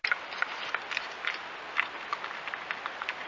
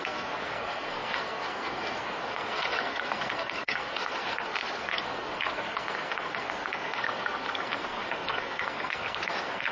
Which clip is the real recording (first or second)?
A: first